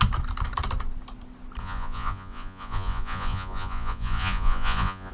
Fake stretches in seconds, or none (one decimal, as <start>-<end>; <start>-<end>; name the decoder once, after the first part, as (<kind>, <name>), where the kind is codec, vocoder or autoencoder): 1.6-5.1 (vocoder, Vocos)